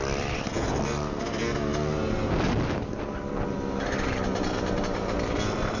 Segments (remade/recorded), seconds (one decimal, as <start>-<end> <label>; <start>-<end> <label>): 0.0-5.8 recorded